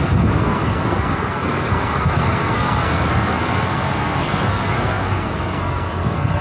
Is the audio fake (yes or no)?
yes